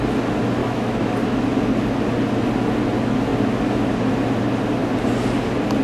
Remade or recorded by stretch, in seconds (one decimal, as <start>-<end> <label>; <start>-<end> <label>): 0.0-0.6 recorded; 0.6-1.1 remade; 1.1-5.8 recorded